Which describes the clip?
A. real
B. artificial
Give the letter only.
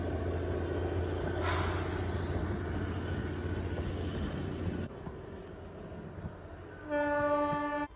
A